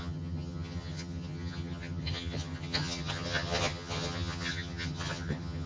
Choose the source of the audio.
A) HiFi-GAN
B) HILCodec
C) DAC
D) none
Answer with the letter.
A